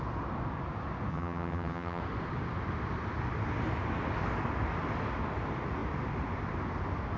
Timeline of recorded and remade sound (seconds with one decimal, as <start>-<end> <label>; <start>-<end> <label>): 0.0-1.1 recorded; 1.1-2.0 remade; 2.0-7.2 recorded